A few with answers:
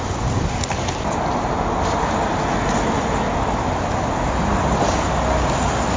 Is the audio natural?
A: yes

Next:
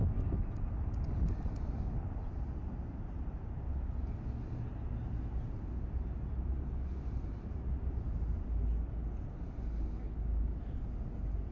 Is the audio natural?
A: yes